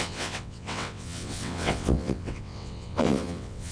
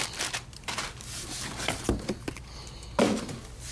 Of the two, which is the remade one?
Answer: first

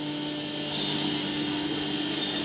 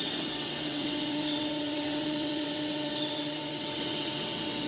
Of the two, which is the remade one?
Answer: second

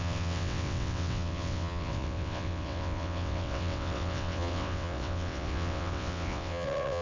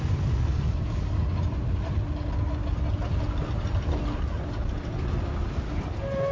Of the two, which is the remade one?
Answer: first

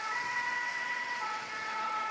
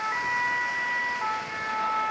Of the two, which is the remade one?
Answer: first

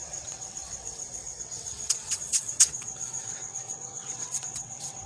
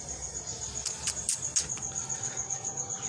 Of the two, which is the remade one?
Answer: first